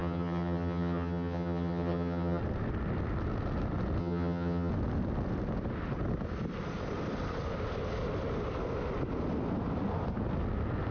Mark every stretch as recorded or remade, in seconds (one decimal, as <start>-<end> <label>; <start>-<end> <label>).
0.0-2.4 remade; 2.4-4.0 recorded; 4.0-4.7 remade; 4.7-10.9 recorded